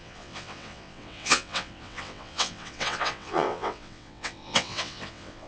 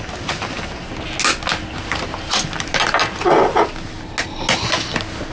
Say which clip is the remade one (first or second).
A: first